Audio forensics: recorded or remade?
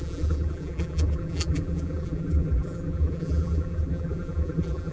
remade